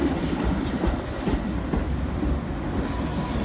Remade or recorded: recorded